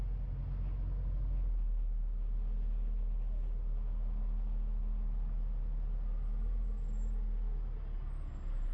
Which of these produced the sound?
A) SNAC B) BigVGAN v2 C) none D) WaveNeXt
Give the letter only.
C